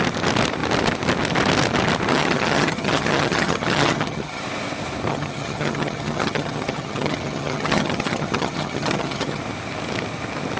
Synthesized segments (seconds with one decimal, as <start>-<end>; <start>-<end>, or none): 2.1-4.4; 5.1-9.4